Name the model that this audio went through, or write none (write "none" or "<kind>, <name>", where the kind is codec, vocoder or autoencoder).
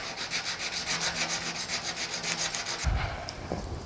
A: none